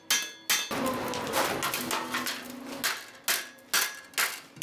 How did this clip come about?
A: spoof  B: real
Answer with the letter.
B